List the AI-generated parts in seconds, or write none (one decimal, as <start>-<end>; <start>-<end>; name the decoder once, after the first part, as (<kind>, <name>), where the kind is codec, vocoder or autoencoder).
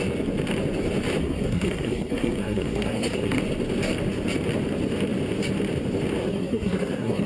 1.2-3.4 (codec, SNAC); 6.2-7.3